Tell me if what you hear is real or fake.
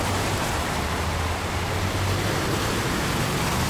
real